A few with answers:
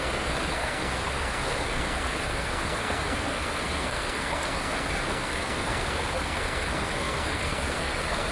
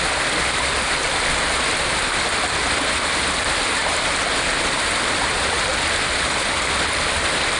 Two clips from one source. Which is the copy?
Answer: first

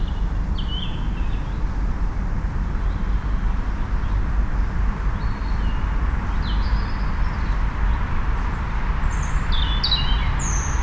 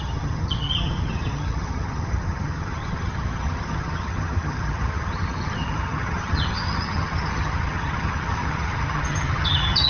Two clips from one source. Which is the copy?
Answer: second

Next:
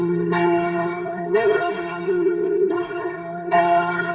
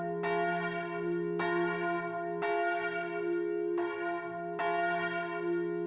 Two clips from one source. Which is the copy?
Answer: first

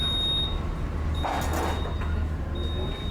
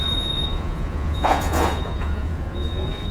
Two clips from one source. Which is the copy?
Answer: second